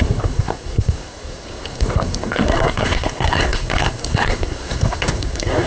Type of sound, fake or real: fake